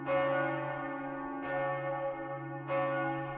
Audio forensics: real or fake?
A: real